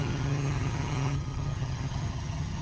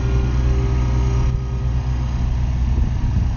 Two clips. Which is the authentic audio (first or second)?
second